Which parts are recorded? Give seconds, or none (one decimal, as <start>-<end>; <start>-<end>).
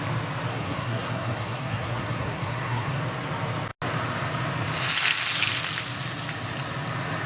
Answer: 0.0-0.5; 3.0-7.3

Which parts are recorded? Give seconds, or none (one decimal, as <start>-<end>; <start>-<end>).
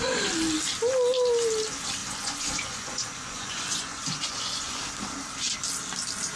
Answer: 0.0-2.0; 4.8-6.4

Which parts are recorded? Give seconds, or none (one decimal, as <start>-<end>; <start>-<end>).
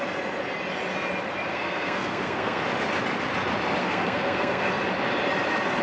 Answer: 0.0-1.5; 2.6-3.8; 4.7-5.8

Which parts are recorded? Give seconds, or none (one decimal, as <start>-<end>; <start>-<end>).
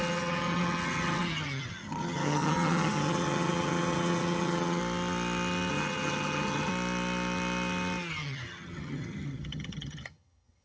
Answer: 4.8-5.7; 6.7-8.1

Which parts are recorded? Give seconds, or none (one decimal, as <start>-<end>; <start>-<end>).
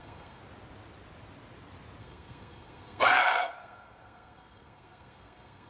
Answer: 0.4-2.0